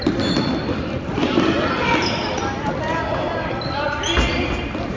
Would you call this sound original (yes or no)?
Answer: yes